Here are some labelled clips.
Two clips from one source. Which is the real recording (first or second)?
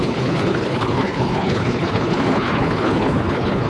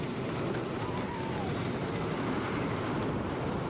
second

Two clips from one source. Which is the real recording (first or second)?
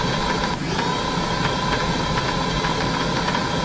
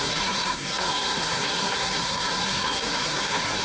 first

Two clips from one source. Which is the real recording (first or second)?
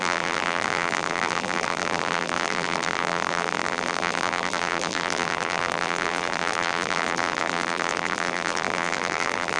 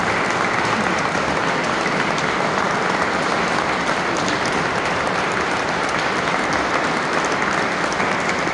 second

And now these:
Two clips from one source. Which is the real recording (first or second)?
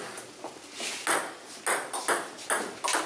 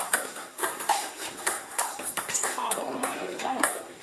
first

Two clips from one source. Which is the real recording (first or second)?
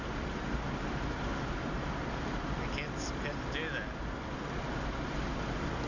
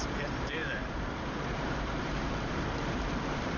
first